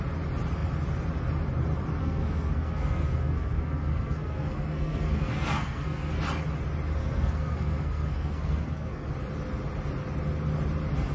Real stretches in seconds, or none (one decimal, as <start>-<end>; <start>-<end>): 0.0-2.0; 6.2-7.0; 9.1-11.1